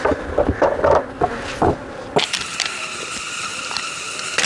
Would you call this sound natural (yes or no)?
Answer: yes